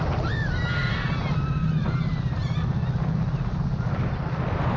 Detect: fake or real real